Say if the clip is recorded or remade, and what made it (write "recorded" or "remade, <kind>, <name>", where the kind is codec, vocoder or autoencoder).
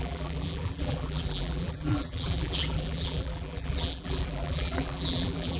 remade, vocoder, BigVGAN v2